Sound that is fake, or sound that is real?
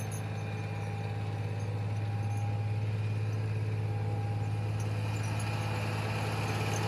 real